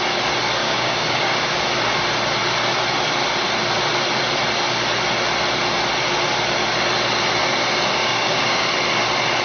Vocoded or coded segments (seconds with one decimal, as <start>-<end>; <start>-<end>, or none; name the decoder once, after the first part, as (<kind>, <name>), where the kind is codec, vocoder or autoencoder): 0.6-1.6 (codec, DAC); 8.0-8.7